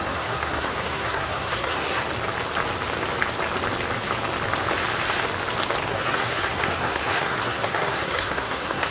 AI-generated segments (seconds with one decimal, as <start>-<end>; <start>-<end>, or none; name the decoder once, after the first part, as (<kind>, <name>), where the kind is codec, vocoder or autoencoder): 0.0-2.0 (codec, SNAC); 5.9-8.9